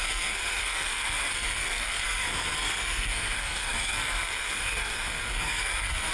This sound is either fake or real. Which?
fake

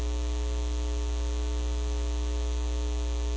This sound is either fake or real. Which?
real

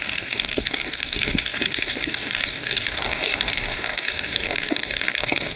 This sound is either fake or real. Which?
fake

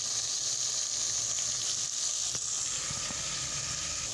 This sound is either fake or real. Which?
real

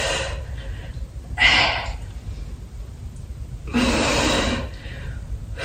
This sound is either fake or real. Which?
real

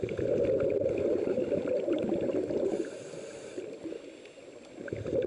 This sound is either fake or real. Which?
real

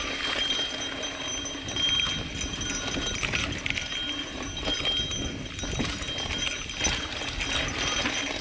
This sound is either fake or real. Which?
real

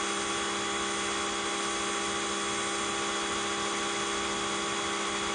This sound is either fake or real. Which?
real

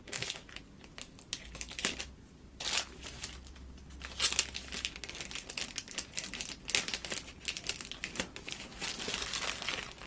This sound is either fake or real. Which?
real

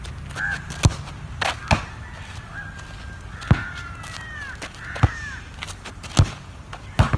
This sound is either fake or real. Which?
real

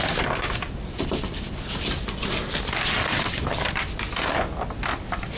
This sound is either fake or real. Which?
real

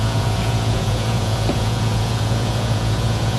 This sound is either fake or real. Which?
fake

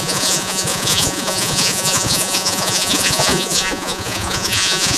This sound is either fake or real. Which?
fake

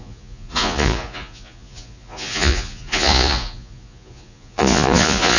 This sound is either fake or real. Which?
fake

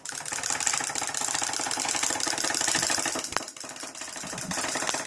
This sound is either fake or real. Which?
real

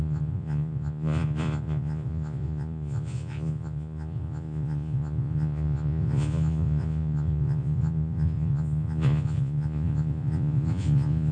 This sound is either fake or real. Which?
fake